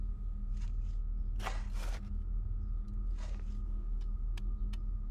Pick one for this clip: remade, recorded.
recorded